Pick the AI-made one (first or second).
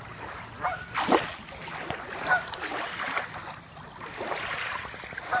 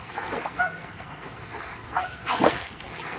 second